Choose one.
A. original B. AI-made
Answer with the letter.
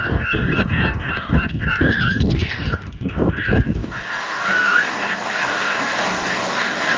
B